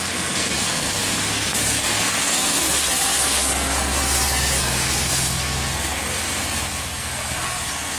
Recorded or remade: remade